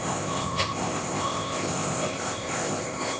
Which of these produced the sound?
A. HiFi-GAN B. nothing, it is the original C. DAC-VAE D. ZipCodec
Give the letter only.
D